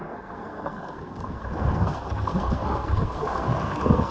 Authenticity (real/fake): fake